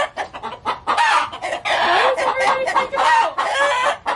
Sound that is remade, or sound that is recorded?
recorded